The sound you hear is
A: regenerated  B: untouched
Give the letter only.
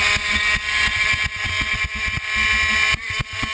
B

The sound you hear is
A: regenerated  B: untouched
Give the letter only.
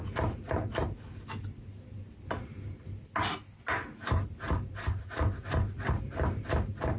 B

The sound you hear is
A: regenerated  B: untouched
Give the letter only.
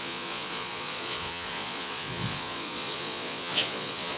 A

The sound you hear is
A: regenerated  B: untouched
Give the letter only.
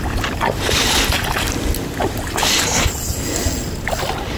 B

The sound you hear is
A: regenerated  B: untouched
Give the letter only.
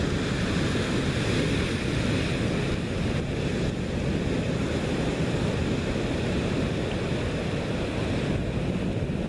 B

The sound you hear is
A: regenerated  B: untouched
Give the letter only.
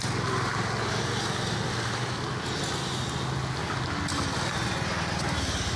B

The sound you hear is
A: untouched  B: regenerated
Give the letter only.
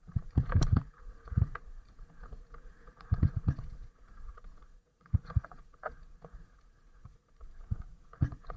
B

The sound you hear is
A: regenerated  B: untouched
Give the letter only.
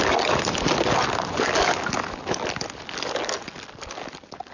B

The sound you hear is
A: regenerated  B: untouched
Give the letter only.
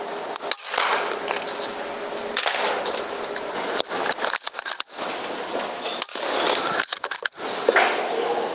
B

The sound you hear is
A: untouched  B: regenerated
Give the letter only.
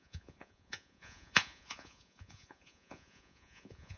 B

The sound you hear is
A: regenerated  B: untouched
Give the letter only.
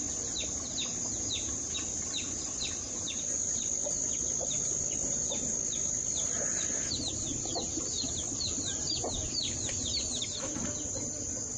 B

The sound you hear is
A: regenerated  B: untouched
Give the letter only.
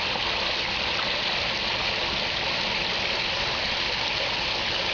B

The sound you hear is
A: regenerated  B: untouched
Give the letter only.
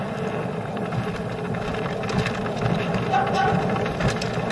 B